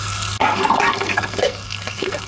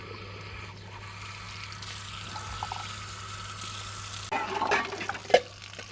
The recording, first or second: second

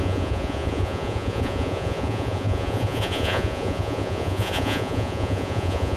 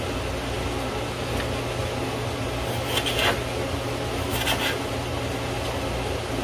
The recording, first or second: second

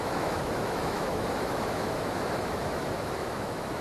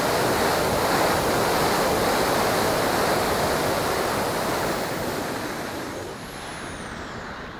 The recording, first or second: second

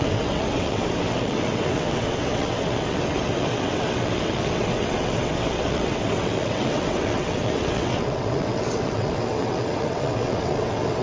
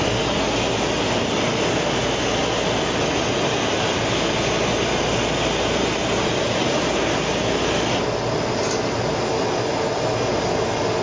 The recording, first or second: second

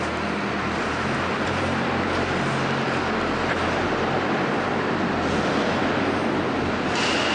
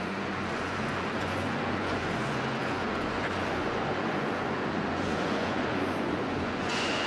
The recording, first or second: first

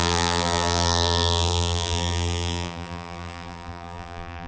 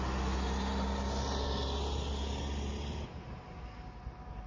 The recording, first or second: second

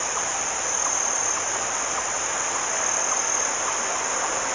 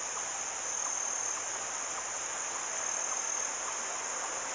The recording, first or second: second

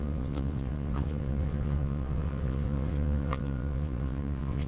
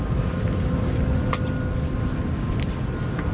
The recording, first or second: second